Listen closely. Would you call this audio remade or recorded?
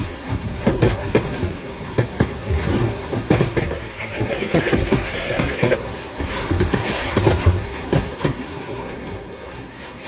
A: remade